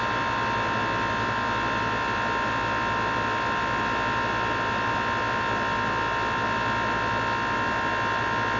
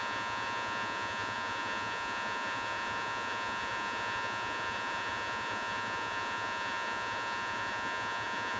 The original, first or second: first